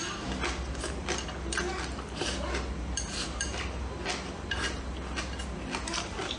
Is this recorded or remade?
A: recorded